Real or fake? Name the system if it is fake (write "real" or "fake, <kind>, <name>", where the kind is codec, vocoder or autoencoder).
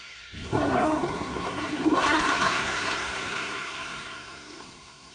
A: fake, codec, SNAC